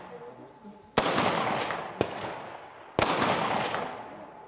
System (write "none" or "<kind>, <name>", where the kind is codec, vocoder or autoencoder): none